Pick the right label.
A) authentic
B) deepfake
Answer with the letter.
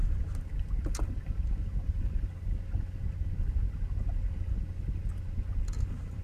A